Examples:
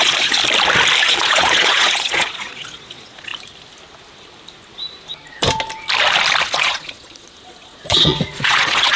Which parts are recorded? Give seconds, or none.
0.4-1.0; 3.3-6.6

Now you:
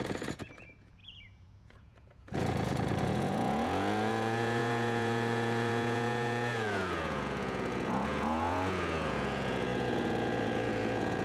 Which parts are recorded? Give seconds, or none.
none

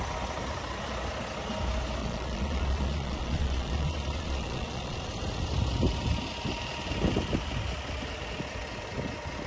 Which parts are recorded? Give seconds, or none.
0.0-2.0; 5.1-9.5

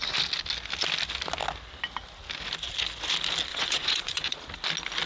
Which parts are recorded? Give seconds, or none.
0.0-3.5; 4.4-5.1